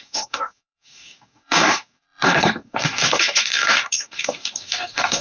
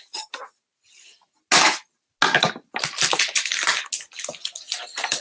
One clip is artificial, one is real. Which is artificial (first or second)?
first